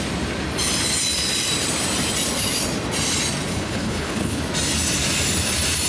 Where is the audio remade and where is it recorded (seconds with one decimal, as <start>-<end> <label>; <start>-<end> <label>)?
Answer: 0.0-3.5 recorded; 3.5-4.4 remade; 4.4-5.9 recorded